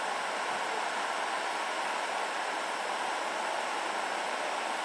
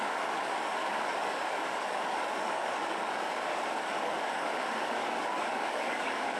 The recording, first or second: first